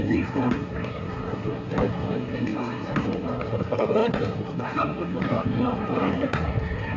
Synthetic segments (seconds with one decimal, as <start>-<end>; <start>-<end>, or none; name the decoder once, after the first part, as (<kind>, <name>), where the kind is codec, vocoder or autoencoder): 0.0-7.0 (codec, SNAC)